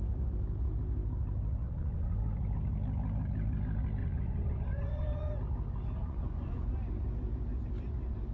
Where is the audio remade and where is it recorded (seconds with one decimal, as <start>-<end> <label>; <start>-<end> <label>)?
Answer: 0.0-1.6 recorded; 1.6-2.3 remade; 2.3-4.0 recorded; 4.0-5.3 remade; 5.3-6.0 recorded; 6.0-6.7 remade; 6.7-8.3 recorded